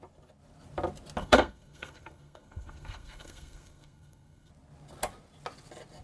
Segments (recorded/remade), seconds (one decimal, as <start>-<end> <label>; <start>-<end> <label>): 0.0-1.2 recorded; 1.2-4.5 remade; 4.5-6.0 recorded